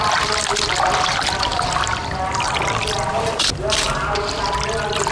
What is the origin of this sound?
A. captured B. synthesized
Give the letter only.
A